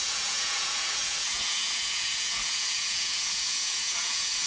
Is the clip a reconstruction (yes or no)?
yes